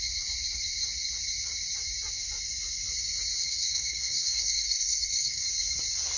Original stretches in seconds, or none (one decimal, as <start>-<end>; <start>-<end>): 0.0-3.4; 5.4-6.2